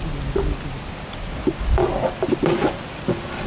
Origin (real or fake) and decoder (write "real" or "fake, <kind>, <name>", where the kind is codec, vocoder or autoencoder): real